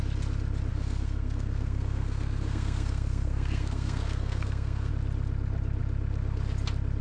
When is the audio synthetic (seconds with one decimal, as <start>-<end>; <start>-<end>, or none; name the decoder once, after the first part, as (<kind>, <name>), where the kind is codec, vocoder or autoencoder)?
0.7-4.9 (codec, SNAC)